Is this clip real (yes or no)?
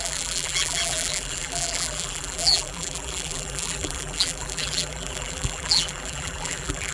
no